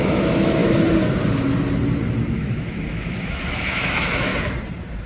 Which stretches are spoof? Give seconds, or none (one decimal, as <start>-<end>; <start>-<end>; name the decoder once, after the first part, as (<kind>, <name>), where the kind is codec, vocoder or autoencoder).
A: 0.0-0.6 (autoencoder, DAC-VAE); 2.3-4.3